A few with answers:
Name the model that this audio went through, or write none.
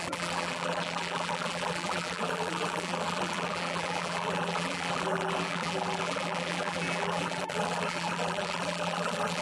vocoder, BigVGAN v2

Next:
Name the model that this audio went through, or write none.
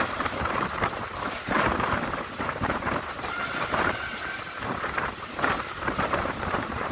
vocoder, BigVGAN v2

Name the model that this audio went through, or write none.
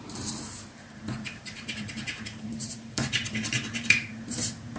vocoder, BigVGAN v2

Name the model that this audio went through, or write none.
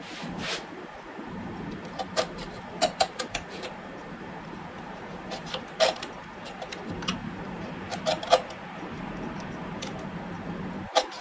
vocoder, BigVGAN v2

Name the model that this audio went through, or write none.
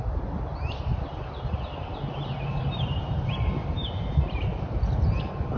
none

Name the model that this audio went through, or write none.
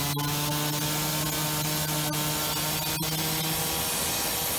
none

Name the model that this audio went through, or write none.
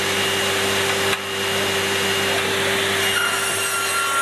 none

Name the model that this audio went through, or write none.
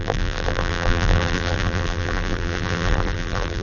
vocoder, BigVGAN v2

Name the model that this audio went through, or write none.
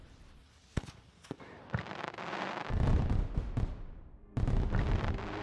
vocoder, BigVGAN v2